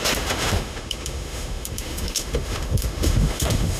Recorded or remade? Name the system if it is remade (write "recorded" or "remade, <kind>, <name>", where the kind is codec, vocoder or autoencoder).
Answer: remade, autoencoder, DAC-VAE